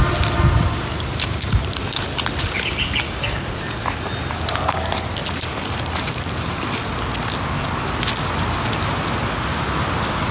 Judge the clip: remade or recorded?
recorded